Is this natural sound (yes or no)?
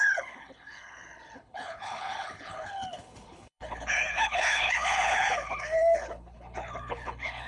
no